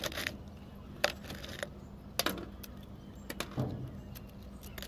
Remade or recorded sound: recorded